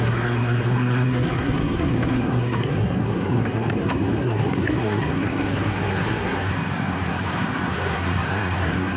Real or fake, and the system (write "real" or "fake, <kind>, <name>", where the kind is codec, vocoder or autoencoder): fake, codec, SNAC